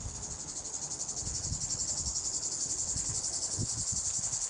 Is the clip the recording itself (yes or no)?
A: no